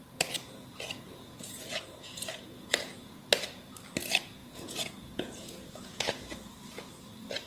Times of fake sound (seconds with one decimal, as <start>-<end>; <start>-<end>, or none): 1.1-3.2; 4.4-6.2